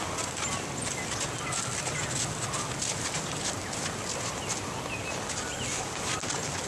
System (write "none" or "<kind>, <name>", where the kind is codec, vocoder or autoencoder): none